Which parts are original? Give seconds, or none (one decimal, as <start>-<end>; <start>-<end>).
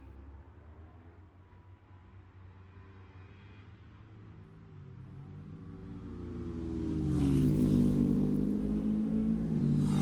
0.0-8.6; 9.6-10.0